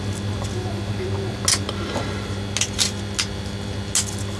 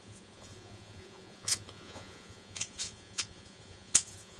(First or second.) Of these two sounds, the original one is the first